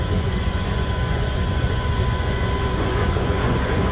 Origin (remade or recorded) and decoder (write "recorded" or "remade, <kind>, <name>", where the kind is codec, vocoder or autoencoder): remade, vocoder, Vocos